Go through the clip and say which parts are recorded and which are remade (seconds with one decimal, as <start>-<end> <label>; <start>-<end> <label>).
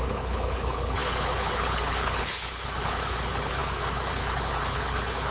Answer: 0.0-5.3 remade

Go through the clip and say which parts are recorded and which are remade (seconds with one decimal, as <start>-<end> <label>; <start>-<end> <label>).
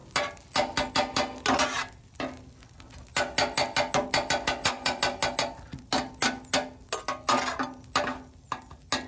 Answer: 0.0-9.1 recorded